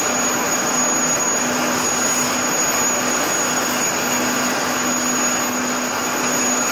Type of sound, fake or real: real